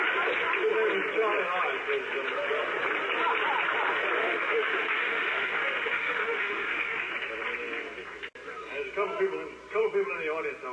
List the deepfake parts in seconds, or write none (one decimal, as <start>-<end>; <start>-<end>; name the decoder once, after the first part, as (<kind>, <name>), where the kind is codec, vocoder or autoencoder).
4.2-7.1 (autoencoder, DAC-VAE)